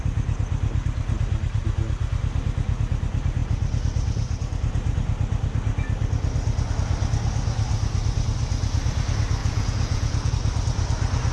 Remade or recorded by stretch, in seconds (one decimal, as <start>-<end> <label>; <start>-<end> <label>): 0.0-9.4 recorded; 9.4-10.3 remade; 10.3-11.3 recorded